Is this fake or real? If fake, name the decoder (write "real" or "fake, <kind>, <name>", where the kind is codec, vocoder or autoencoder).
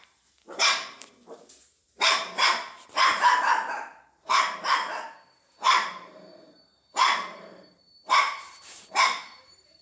fake, vocoder, BigVGAN v2